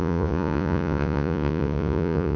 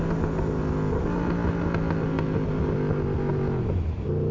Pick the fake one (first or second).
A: first